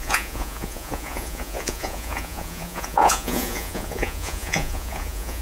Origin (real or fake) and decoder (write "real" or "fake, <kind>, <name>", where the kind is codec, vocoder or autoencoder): fake, vocoder, Vocos